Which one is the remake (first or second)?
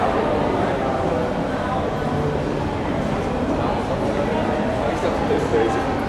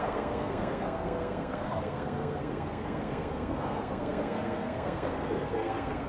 second